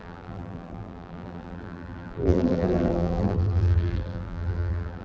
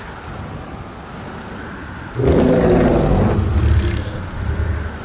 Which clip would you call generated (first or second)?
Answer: first